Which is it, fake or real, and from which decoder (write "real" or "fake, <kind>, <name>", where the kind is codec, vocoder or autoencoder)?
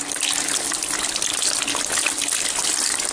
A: real